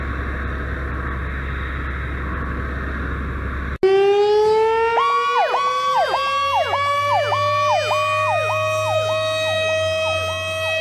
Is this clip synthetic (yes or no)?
no